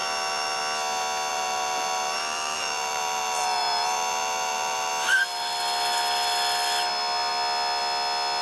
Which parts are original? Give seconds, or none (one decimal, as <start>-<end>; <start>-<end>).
0.6-1.3; 4.9-8.4